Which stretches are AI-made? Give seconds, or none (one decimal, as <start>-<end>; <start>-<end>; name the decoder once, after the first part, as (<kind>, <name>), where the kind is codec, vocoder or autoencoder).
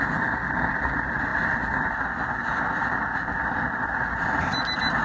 none